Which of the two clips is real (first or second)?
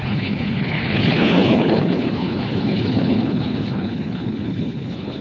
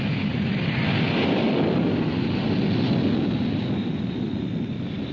second